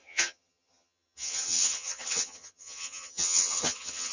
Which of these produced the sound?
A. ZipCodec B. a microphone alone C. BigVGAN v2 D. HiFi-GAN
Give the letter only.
D